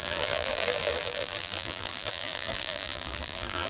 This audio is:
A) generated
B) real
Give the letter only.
A